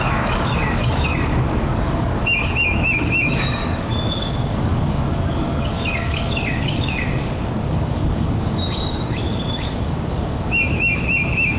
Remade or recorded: remade